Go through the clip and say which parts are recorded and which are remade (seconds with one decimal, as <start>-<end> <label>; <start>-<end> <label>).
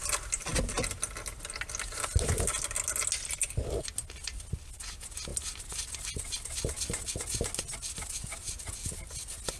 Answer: 0.0-9.6 recorded